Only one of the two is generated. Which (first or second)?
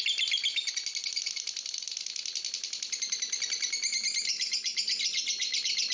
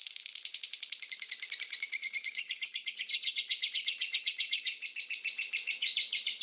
second